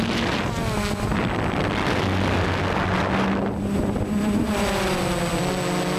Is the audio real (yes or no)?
yes